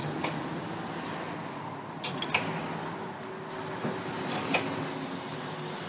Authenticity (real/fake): real